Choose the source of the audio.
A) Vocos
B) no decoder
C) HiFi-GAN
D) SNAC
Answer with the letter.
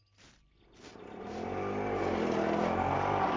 B